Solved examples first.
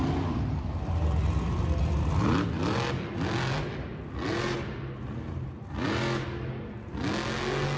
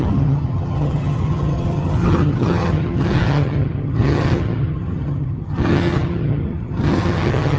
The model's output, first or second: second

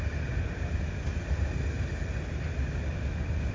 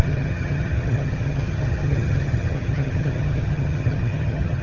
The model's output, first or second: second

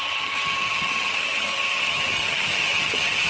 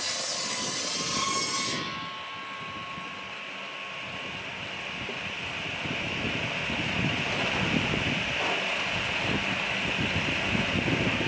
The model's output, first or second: first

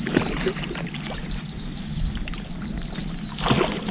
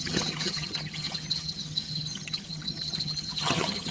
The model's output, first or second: second